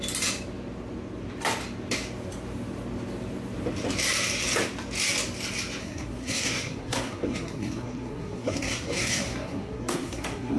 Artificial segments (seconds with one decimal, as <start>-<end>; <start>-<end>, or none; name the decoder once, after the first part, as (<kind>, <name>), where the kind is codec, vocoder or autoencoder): 5.8-10.6 (codec, SNAC)